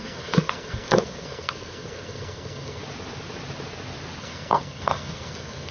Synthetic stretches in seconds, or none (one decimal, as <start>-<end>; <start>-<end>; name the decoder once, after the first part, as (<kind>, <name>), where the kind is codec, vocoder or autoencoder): 0.0-2.8 (codec, SNAC); 4.2-5.7